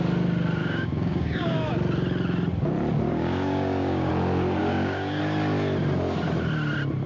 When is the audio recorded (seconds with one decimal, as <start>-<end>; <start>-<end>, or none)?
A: 0.0-0.6; 1.7-3.1; 4.1-4.6; 5.2-7.1